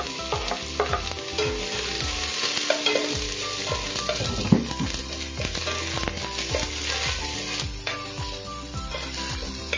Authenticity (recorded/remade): recorded